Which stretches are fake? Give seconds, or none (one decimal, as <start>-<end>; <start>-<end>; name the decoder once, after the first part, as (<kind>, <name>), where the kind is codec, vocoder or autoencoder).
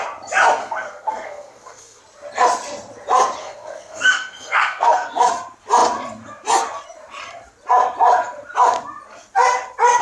0.6-2.0 (codec, SNAC); 3.4-5.3